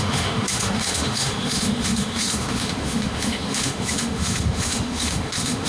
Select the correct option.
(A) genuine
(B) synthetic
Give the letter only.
B